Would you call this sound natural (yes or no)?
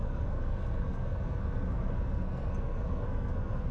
no